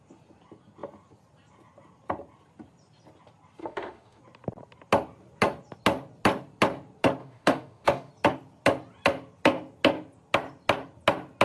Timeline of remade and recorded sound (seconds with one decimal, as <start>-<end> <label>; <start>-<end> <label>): 0.0-3.6 recorded; 3.6-4.2 remade; 4.2-7.2 recorded; 7.2-8.1 remade; 8.1-11.4 recorded